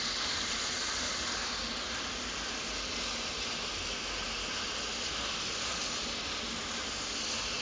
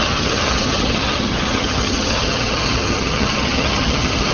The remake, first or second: second